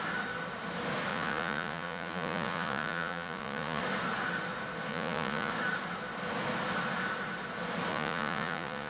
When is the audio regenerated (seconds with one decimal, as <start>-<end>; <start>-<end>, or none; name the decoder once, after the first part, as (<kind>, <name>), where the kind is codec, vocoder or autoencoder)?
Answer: 1.1-3.8 (vocoder, Vocos); 4.9-5.5; 7.9-8.9